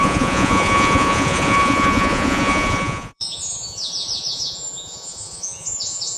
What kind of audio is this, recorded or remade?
remade